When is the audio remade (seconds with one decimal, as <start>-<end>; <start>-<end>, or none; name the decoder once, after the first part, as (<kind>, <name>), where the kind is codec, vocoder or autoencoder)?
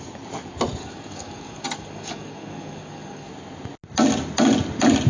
0.8-3.3 (codec, DAC)